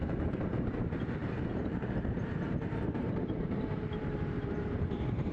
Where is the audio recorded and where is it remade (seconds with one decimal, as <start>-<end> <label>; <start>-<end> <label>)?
0.0-5.3 remade